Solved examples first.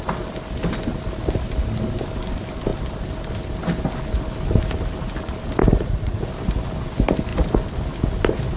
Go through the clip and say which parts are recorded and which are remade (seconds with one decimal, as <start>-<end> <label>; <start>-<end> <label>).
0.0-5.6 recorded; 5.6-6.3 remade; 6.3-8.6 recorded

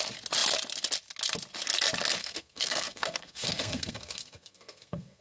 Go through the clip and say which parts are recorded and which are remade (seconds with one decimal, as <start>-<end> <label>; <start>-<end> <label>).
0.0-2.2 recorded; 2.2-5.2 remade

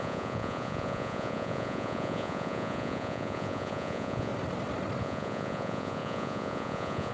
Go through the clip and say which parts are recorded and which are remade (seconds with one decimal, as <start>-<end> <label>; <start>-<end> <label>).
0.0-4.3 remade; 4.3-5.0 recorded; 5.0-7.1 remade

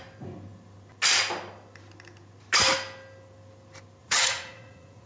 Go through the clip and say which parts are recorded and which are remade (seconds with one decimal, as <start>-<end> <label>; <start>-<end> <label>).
0.0-4.0 recorded; 4.0-5.1 remade

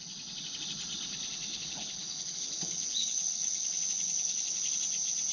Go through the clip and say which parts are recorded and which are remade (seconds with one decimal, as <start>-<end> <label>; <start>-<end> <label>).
0.0-1.5 recorded; 1.5-4.7 remade; 4.7-5.3 recorded